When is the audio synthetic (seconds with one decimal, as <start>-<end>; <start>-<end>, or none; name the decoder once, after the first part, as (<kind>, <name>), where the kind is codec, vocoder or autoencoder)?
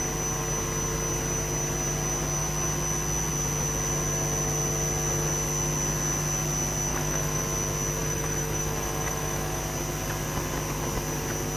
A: 6.9-7.4 (autoencoder, DAC-VAE); 8.0-9.6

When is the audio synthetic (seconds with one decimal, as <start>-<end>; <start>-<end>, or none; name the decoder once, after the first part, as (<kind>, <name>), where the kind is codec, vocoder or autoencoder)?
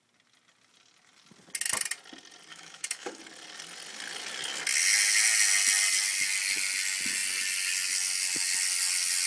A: 2.5-3.2 (autoencoder, DAC-VAE)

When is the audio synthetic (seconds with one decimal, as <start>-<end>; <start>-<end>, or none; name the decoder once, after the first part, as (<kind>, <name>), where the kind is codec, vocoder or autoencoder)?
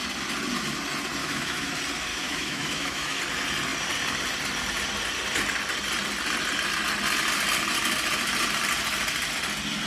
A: 1.2-1.7 (autoencoder, DAC-VAE); 2.1-3.2